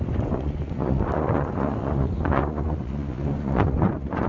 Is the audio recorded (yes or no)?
no